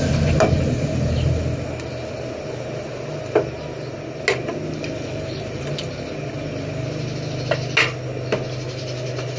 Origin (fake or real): real